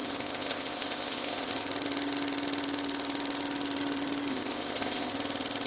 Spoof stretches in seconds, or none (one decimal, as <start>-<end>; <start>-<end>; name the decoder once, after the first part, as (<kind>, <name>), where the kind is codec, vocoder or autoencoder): 0.0-1.5 (codec, ZipCodec); 4.3-5.1